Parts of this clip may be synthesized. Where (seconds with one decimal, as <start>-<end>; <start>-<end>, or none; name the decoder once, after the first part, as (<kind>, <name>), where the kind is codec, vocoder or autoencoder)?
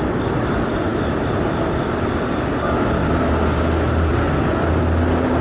none